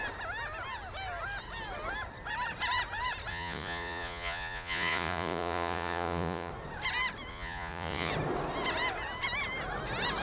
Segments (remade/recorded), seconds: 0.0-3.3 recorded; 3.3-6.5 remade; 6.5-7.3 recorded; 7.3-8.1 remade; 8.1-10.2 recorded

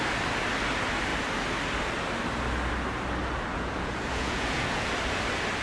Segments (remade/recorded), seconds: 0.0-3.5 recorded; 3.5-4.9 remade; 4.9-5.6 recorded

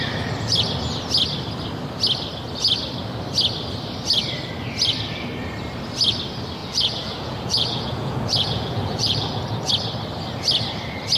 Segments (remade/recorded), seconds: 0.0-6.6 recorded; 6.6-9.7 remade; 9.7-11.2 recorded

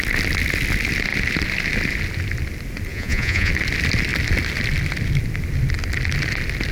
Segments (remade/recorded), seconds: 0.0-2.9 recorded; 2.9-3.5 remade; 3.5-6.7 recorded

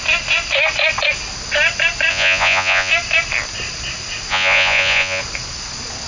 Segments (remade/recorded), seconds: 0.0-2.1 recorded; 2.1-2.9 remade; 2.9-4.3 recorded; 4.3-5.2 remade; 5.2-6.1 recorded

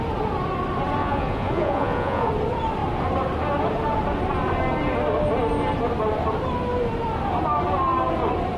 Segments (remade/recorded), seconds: 0.0-1.0 recorded; 1.0-2.3 remade; 2.3-8.6 recorded

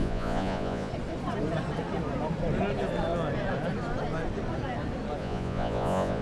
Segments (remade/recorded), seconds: 0.0-0.9 remade; 0.9-5.2 recorded; 5.2-6.2 remade